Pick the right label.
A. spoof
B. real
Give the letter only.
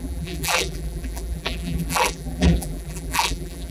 A